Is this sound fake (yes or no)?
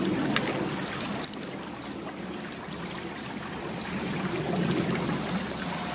no